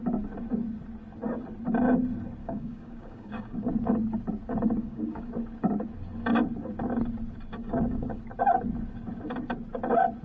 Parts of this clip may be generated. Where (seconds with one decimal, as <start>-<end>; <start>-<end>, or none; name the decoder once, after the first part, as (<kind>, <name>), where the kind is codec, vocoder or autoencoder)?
2.4-3.7 (codec, DAC); 4.8-5.3; 7.6-8.2